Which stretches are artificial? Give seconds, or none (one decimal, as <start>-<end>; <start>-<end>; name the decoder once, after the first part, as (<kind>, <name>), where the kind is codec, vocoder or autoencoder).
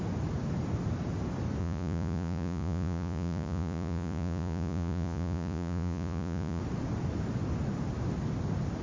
1.6-6.6 (vocoder, Vocos)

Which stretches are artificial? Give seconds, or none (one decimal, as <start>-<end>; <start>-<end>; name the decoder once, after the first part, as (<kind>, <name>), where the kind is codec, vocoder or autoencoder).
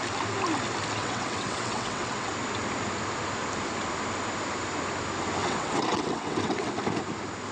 1.0-2.3 (vocoder, WaveNeXt); 5.4-6.7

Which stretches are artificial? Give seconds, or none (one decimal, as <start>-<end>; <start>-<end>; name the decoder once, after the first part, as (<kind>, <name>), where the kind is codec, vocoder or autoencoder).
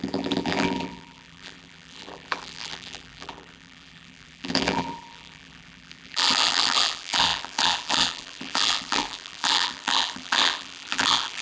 0.0-11.4 (vocoder, BigVGAN v2)